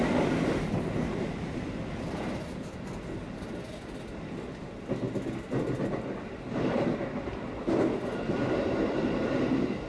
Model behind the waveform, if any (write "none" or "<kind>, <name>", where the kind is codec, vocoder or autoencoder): none